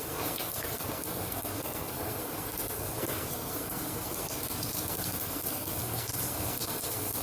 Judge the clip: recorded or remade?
remade